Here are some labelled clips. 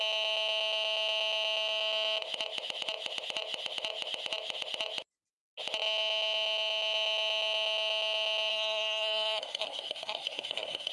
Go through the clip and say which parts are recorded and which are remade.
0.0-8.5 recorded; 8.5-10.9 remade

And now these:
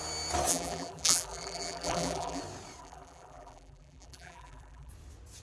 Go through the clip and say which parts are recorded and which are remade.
0.0-0.5 recorded; 0.5-2.4 remade; 2.4-2.8 recorded; 2.8-4.9 remade; 4.9-5.4 recorded